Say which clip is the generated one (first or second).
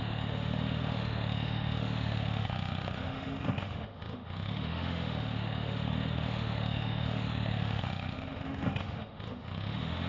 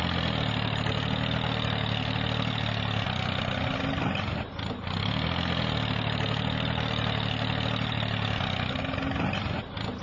first